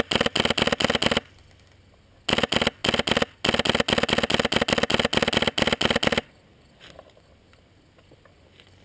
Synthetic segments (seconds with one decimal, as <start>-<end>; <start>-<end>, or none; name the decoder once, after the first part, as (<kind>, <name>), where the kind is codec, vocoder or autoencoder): none